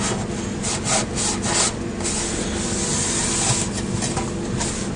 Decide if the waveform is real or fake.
real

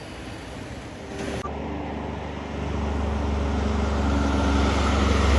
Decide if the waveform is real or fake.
real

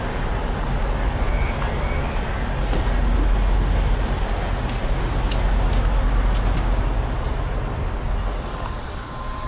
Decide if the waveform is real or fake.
real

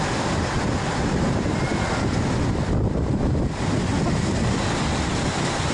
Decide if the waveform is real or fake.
real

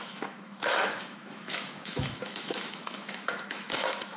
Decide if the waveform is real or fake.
fake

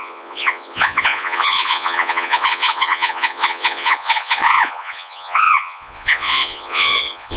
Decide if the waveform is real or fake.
fake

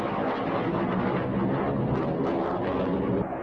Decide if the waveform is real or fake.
real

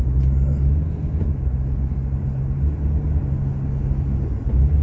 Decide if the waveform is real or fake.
real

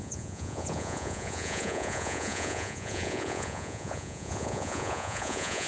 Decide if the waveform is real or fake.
fake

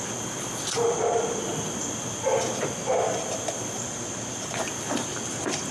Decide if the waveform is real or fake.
real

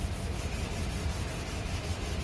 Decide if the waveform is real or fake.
real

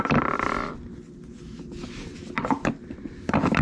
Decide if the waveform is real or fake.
real